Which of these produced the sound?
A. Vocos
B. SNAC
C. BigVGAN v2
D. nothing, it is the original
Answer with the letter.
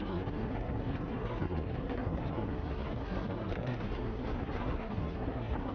B